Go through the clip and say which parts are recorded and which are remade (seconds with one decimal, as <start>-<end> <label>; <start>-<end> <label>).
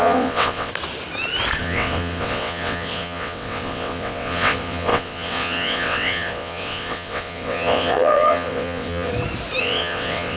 0.0-0.7 remade; 0.7-1.6 recorded; 1.6-9.1 remade; 9.1-9.6 recorded; 9.6-10.4 remade